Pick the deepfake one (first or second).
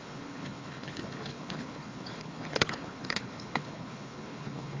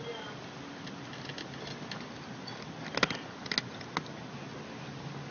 first